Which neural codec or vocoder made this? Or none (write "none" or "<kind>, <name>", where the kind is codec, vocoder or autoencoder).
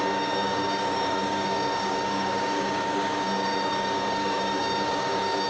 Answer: codec, DAC